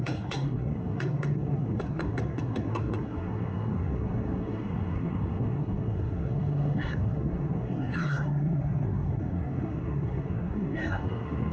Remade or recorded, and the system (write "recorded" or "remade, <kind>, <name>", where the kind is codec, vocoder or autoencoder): remade, codec, SNAC